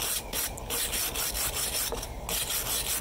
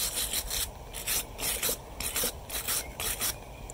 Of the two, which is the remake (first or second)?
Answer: second